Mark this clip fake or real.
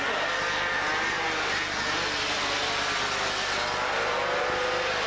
real